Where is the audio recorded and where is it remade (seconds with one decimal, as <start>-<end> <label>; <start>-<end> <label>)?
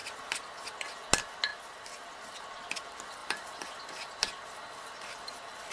0.0-3.2 recorded; 3.2-5.7 remade